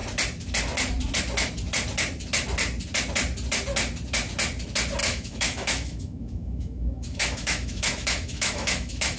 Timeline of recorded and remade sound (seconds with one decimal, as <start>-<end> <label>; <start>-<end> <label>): 0.0-5.0 recorded; 5.0-9.2 remade